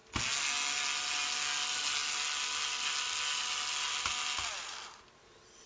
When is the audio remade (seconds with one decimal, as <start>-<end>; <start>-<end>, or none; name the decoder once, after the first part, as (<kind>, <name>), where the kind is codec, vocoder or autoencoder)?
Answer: none